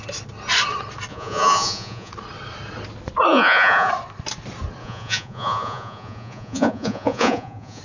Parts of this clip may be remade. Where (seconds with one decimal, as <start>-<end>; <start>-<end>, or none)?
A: 1.1-2.1; 3.3-3.9; 4.8-7.8